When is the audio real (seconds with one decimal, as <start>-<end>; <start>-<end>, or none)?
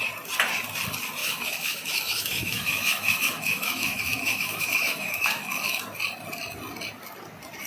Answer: 0.0-1.2; 5.8-7.7